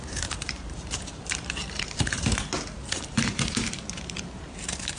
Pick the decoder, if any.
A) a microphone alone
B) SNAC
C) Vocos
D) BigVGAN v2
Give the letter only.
D